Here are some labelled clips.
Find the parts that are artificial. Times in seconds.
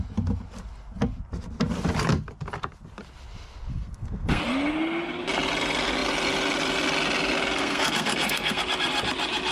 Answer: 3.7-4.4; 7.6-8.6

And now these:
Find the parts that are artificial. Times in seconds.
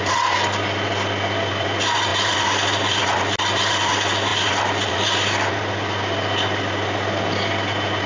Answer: none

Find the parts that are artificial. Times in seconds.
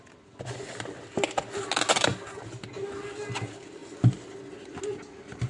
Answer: none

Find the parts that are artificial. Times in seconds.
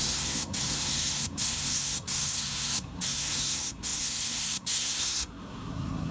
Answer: 0.0-6.1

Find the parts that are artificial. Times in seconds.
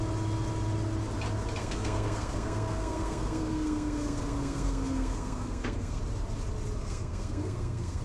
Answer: 1.6-6.0; 6.8-8.0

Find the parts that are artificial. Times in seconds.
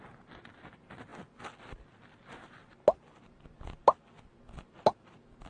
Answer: none